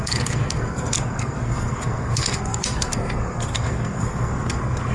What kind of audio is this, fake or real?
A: fake